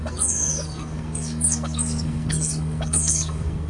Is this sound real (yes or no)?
no